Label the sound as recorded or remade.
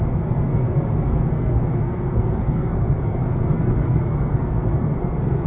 remade